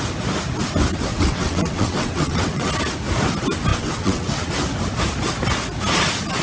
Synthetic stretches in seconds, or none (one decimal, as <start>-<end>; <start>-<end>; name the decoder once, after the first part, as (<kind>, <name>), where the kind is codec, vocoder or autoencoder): 1.1-2.7 (vocoder, WaveNeXt); 3.7-4.5